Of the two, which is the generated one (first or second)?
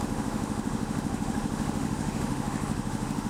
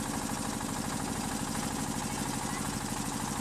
first